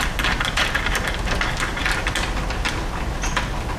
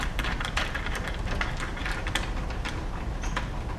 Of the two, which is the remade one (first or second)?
second